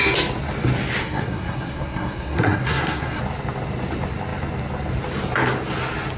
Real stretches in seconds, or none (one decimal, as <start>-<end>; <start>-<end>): 0.0-1.0; 3.2-6.2